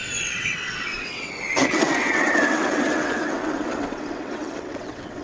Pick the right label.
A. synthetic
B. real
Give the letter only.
A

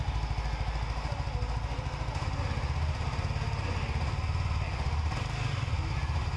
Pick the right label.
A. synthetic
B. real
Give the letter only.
B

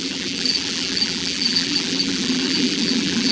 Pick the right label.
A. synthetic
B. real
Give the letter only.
A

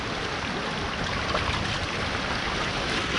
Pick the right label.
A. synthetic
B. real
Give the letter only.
B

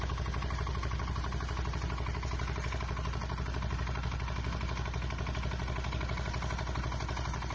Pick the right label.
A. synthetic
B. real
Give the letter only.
B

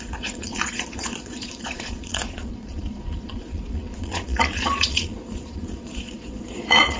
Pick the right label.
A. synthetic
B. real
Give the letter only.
A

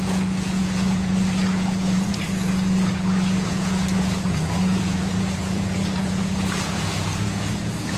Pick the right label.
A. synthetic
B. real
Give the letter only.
A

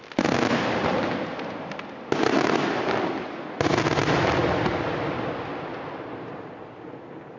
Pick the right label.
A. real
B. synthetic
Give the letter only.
A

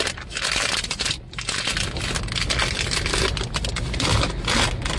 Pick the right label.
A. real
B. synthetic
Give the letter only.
A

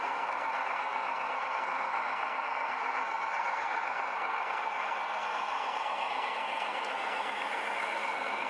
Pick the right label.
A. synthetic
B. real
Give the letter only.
A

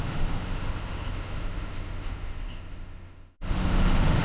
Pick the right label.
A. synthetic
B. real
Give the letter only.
A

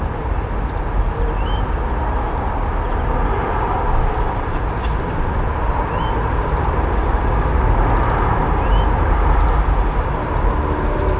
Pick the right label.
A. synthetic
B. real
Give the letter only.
B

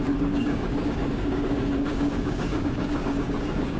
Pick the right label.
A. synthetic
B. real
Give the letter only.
A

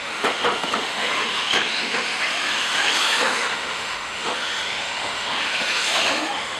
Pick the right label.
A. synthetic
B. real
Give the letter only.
A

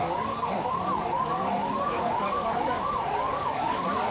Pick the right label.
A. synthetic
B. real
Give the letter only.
A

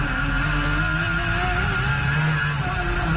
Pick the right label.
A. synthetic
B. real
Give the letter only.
B